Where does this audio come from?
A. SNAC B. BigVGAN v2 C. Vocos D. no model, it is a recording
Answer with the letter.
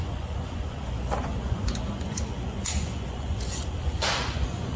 C